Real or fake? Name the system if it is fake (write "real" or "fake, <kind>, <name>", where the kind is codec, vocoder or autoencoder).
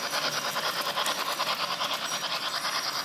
real